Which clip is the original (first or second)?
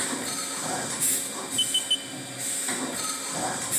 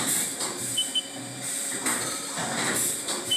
first